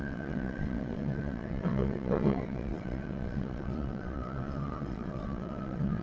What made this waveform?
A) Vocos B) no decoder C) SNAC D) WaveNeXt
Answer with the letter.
D